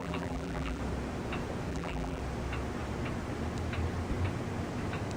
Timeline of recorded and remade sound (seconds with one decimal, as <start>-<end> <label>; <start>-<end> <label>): 0.0-0.8 remade; 0.8-1.7 recorded; 1.7-2.2 remade; 2.2-5.2 recorded